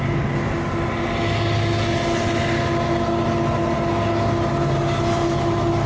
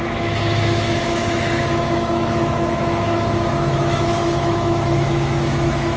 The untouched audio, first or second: first